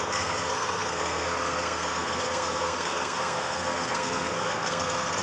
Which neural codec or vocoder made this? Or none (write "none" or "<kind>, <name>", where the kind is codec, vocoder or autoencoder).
codec, SNAC